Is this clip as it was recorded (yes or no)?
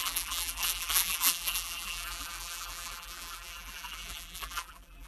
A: no